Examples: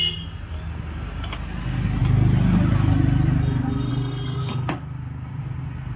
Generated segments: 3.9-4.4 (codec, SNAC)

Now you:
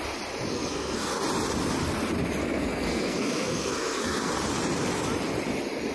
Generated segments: 0.5-1.2 (codec, SNAC); 2.4-4.3

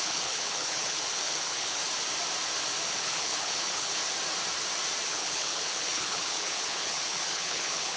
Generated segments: 0.0-1.8 (codec, HILCodec); 2.9-4.0; 5.1-8.0

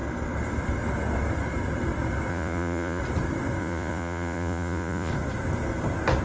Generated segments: 2.3-3.0 (vocoder, Vocos); 3.6-5.1

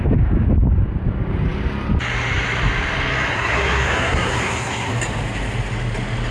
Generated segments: 3.3-4.9 (codec, SNAC)

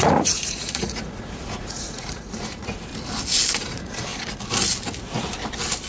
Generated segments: 0.0-2.9 (vocoder, Vocos); 3.6-4.1

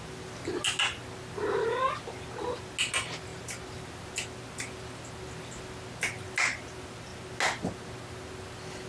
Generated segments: none

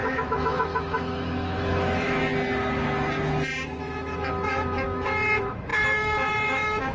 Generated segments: 0.0-2.2 (autoencoder, DAC-VAE); 3.8-6.9